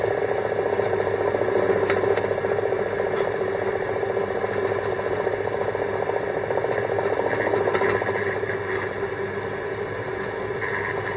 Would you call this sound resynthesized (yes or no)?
no